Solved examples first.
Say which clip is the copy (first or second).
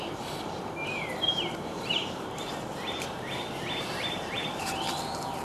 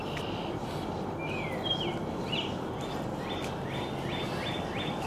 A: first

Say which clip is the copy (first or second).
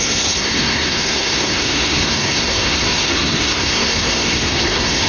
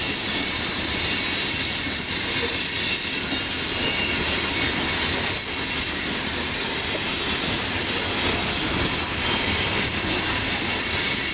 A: first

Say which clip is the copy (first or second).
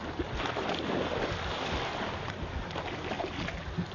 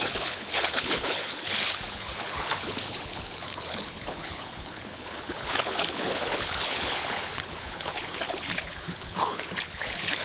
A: second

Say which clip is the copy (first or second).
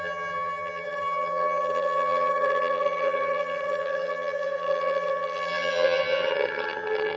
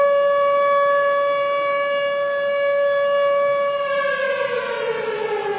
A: first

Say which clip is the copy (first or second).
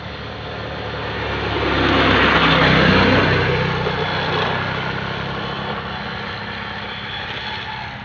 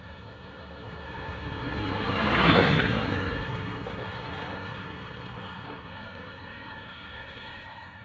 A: second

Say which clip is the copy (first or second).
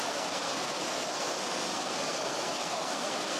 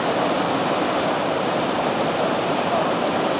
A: first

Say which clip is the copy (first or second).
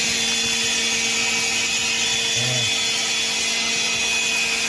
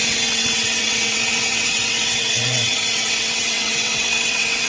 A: second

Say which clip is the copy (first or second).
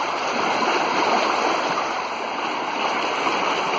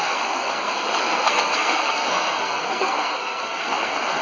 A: second